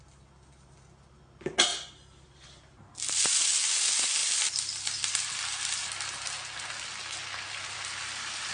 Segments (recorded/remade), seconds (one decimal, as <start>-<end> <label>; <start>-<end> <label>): 0.0-1.7 recorded; 1.7-3.8 remade; 3.8-8.5 recorded